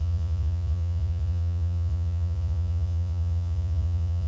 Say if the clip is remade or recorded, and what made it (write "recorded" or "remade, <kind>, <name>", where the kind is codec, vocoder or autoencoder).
remade, vocoder, Vocos